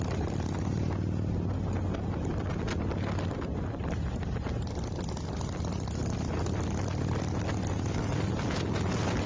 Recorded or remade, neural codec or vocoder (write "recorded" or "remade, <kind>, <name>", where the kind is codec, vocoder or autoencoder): recorded